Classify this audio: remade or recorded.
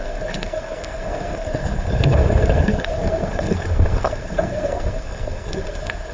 remade